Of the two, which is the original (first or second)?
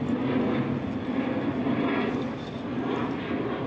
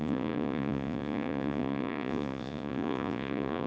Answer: first